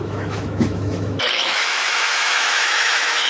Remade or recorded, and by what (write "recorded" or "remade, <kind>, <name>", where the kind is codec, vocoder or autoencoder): remade, autoencoder, DAC-VAE